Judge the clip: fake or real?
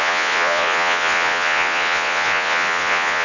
fake